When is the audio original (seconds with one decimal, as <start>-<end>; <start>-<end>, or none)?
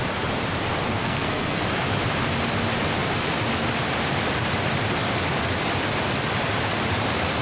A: 0.0-1.0; 1.6-7.4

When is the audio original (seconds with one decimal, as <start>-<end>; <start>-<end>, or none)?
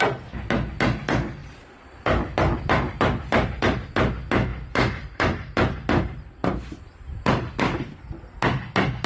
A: 0.0-1.4; 3.9-4.5; 8.0-9.1